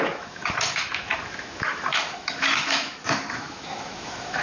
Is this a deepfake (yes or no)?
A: yes